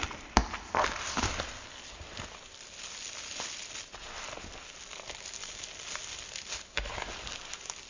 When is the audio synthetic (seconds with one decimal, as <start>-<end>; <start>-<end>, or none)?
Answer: none